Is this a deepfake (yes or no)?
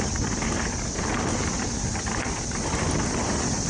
no